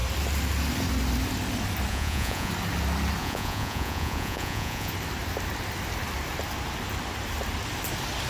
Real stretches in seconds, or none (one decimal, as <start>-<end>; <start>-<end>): 0.0-1.9; 2.5-3.2; 4.9-8.3